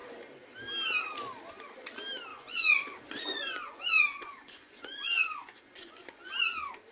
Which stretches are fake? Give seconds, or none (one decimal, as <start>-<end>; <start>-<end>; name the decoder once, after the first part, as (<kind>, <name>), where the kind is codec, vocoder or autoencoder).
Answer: 2.3-6.4 (vocoder, Vocos)

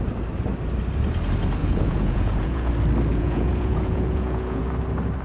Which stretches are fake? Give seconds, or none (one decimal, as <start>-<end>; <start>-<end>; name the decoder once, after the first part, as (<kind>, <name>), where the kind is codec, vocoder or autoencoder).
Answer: 1.6-2.7 (vocoder, Vocos); 3.1-4.6